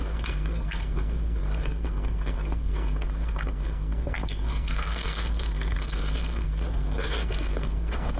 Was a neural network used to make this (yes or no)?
yes